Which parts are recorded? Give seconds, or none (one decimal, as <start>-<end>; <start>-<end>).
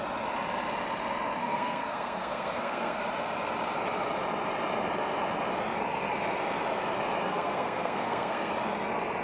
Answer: 0.0-1.4; 3.1-7.3; 8.5-9.2